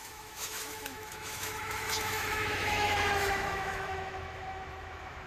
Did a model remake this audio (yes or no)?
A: yes